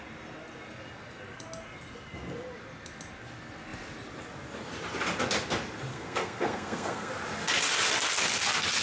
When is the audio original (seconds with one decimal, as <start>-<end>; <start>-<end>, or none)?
0.0-5.9; 7.1-8.8

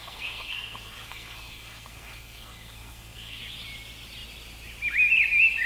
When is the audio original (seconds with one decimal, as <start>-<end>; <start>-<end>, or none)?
3.4-5.7

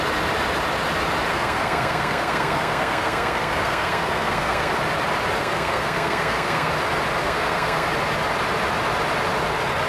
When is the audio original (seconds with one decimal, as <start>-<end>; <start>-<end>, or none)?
0.0-1.3; 4.7-5.4; 6.7-7.2; 7.9-9.9

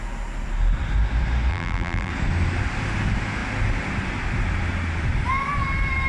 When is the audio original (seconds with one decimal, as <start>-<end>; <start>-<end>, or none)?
0.0-1.5; 2.1-6.1